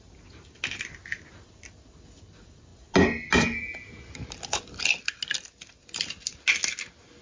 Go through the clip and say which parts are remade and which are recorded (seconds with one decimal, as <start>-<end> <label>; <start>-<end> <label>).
0.0-7.2 recorded